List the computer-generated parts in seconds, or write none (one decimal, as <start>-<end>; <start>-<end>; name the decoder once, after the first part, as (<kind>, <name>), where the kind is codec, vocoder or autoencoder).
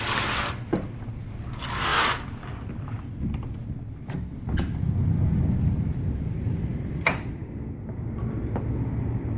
0.0-1.9 (vocoder, BigVGAN v2); 5.9-9.4